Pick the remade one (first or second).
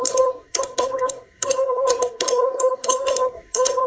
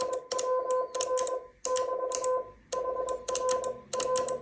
first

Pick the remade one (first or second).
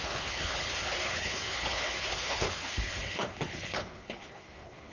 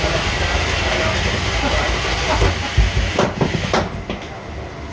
first